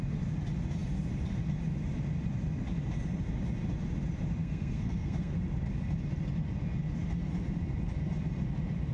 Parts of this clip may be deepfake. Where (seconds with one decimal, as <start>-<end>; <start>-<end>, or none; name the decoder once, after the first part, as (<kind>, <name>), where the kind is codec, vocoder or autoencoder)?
4.4-5.4 (codec, SNAC)